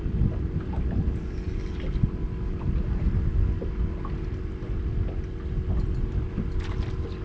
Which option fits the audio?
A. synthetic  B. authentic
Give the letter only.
B